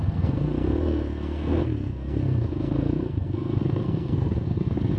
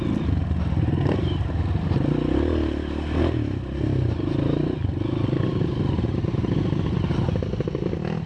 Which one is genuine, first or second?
second